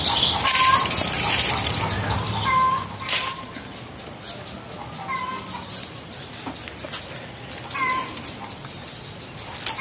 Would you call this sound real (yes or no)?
yes